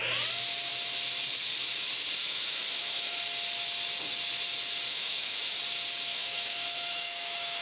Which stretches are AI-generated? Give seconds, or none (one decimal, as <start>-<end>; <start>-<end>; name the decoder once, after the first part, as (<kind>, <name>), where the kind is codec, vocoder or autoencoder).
2.2-3.2 (autoencoder, DAC-VAE); 4.9-5.6; 6.1-7.6